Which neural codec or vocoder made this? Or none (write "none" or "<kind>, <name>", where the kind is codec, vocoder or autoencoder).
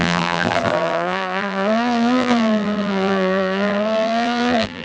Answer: vocoder, BigVGAN v2